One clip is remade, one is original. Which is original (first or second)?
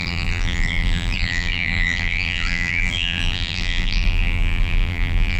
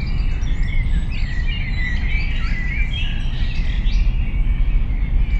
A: second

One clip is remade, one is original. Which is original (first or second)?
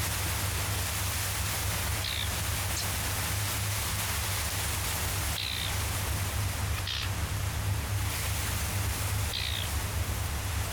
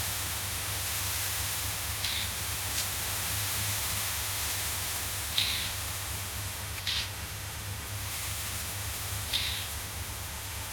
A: first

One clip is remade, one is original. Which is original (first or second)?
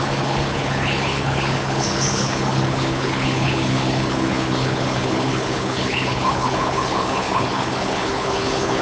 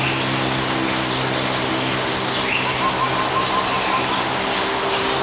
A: second